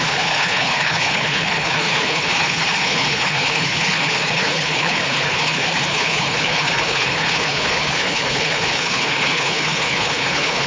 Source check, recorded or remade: remade